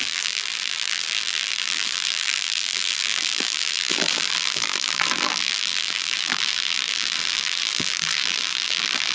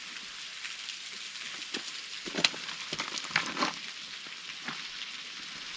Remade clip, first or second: first